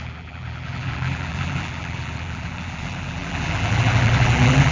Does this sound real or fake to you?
fake